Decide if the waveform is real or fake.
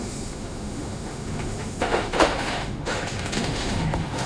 fake